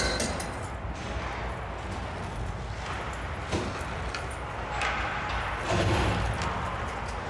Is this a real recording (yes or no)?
yes